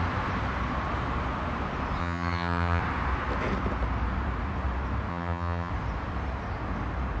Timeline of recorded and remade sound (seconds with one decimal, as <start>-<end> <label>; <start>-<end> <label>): 0.0-2.0 recorded; 2.0-2.8 remade; 2.8-5.1 recorded; 5.1-5.7 remade; 5.7-7.2 recorded